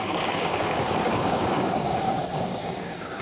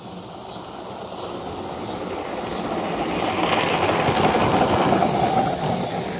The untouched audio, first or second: second